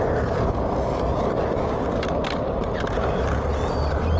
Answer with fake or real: real